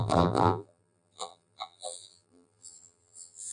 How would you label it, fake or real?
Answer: fake